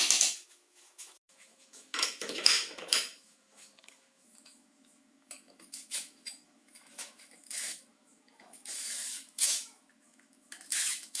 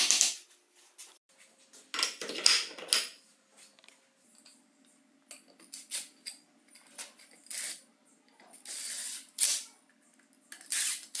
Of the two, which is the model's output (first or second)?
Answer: first